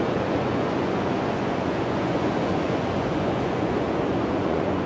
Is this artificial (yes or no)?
yes